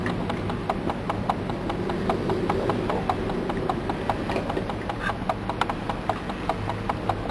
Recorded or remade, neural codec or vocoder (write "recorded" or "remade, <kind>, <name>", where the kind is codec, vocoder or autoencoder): recorded